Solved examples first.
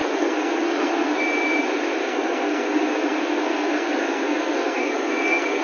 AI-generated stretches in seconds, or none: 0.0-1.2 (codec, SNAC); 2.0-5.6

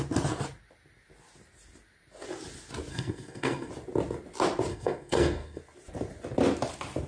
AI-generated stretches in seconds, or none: 2.9-3.7 (codec, SNAC); 4.7-5.6

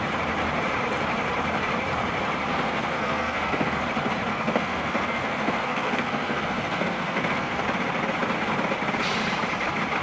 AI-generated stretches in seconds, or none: 2.5-3.8 (codec, SNAC); 4.3-7.6

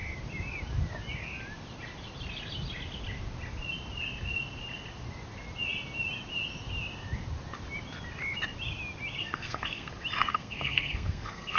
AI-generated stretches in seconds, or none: 9.2-9.9 (codec, SNAC); 10.3-11.6

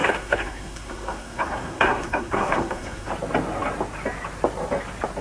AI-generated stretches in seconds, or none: 0.0-3.1 (codec, SNAC)